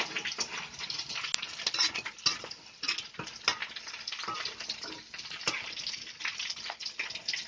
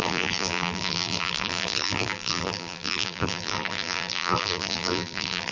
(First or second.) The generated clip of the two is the second